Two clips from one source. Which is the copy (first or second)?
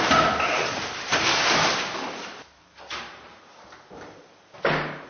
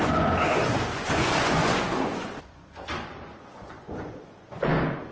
second